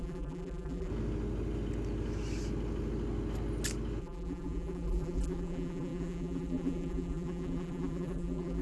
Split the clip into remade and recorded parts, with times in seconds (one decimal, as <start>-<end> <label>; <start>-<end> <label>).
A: 0.0-0.9 remade; 0.9-4.0 recorded; 4.0-8.6 remade